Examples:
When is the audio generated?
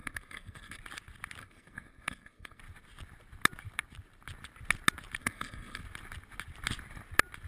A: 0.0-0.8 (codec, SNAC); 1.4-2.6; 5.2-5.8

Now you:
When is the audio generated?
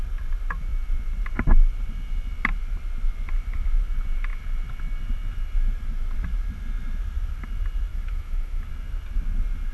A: 7.9-8.7 (autoencoder, DAC-VAE)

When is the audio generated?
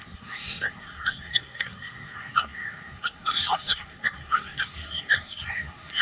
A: 0.0-6.0 (codec, SNAC)